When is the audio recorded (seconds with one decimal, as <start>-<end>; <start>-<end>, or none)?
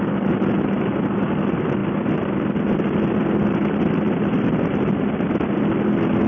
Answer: 0.0-6.3